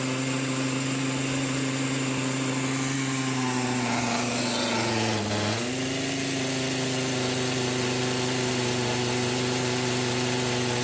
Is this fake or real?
real